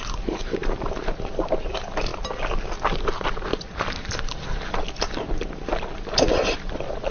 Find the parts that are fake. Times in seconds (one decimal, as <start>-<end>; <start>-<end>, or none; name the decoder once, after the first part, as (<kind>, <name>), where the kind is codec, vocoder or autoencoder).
none